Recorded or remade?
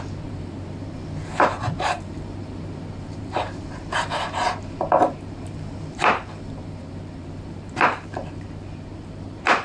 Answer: remade